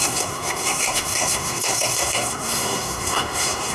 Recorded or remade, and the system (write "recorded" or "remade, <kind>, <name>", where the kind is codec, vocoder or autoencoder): remade, codec, SNAC